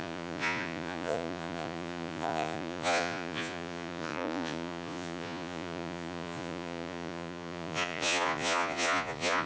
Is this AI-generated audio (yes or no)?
yes